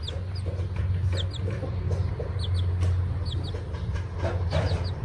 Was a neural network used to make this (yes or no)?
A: no